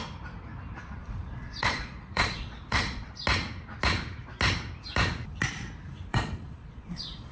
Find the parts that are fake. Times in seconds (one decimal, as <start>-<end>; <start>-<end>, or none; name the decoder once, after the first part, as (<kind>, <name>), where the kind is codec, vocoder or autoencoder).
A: 1.0-3.1 (vocoder, Vocos); 6.1-7.3